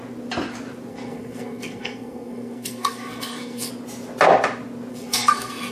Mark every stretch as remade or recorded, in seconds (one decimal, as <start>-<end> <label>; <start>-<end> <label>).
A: 0.0-0.9 recorded; 0.9-3.7 remade; 3.7-4.9 recorded; 4.9-5.7 remade